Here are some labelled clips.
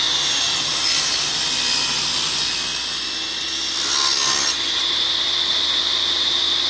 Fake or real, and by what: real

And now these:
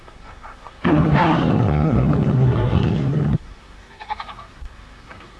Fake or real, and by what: fake, codec, SNAC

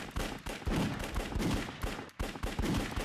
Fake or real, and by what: real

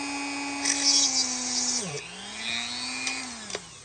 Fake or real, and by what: real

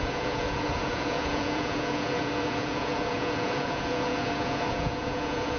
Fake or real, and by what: fake, vocoder, Vocos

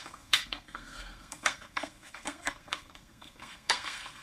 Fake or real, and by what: fake, codec, SNAC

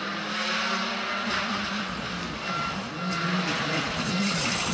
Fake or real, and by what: real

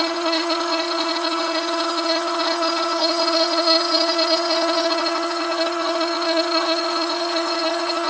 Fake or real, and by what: fake, vocoder, HiFi-GAN